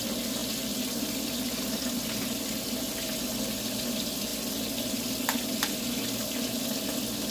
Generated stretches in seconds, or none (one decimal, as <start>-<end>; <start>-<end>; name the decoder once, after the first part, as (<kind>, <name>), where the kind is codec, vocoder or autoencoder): none